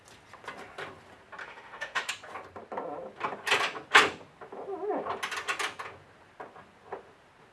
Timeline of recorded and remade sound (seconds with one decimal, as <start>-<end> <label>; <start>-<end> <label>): 0.0-1.4 recorded; 1.4-2.1 remade; 2.1-7.5 recorded